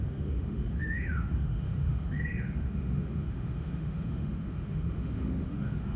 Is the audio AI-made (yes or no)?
yes